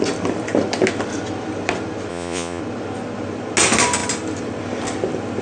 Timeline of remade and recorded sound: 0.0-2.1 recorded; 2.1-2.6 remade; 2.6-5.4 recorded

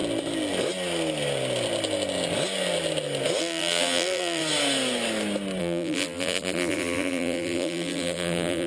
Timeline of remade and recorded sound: 0.0-3.4 recorded; 3.4-4.4 remade; 4.4-5.6 recorded; 5.6-8.7 remade

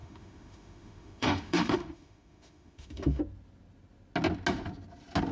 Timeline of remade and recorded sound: 0.0-3.2 remade; 3.2-5.3 recorded

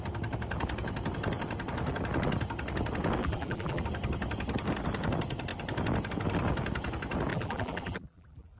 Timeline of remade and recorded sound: 0.0-3.2 recorded; 3.2-3.8 remade; 3.8-7.3 recorded; 7.3-8.6 remade